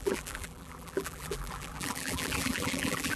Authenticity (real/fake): fake